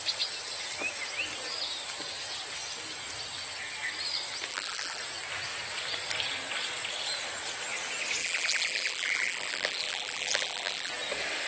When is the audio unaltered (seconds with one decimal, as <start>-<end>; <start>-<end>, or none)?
0.0-4.5; 5.0-8.2; 10.9-11.5